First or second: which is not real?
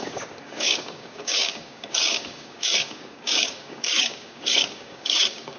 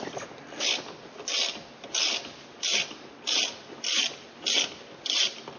first